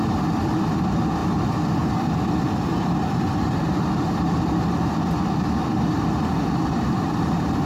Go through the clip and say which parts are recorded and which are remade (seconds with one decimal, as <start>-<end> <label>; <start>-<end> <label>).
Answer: 0.0-1.2 remade; 1.2-1.9 recorded; 1.9-7.7 remade

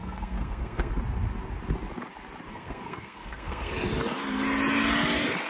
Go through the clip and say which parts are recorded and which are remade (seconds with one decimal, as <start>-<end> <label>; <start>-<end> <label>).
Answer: 0.0-0.9 remade; 0.9-2.5 recorded; 2.5-3.7 remade; 3.7-5.5 recorded

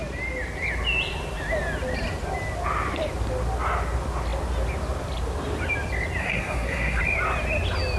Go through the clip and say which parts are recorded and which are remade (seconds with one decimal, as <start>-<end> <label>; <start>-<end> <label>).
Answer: 0.0-6.2 recorded; 6.2-7.0 remade; 7.0-8.0 recorded

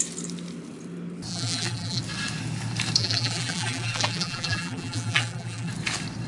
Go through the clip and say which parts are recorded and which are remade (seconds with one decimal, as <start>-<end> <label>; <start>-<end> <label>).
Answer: 0.0-1.3 recorded; 1.3-2.0 remade; 2.0-3.0 recorded; 3.0-5.7 remade; 5.7-6.3 recorded

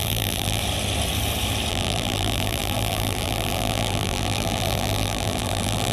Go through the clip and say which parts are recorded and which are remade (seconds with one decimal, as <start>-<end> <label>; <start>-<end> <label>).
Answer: 0.0-0.6 remade; 0.6-1.7 recorded; 1.7-5.9 remade

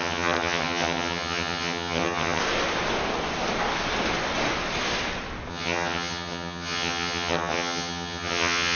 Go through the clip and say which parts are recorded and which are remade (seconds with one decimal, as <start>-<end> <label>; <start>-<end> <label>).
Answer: 0.0-2.4 remade; 2.4-5.5 recorded; 5.5-8.8 remade

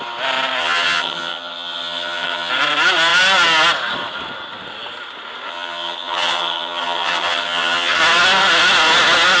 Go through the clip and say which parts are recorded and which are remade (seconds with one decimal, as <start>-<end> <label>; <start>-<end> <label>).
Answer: 0.0-0.6 recorded; 0.6-2.5 remade; 2.5-5.5 recorded; 5.5-8.0 remade; 8.0-9.4 recorded

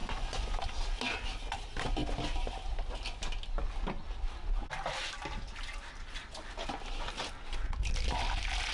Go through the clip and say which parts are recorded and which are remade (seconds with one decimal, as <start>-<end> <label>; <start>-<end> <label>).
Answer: 0.0-0.6 remade; 0.6-8.7 recorded